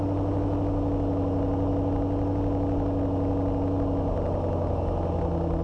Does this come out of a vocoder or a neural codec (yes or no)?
no